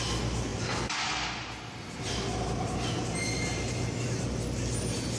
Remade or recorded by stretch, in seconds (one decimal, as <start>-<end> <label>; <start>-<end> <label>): 0.0-5.2 recorded